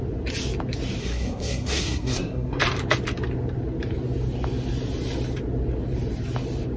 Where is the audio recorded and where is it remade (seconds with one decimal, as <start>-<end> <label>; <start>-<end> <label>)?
0.0-1.0 recorded; 1.0-2.6 remade; 2.6-6.8 recorded